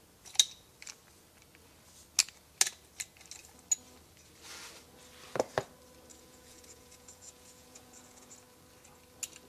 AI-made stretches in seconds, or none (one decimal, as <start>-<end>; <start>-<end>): 6.1-8.3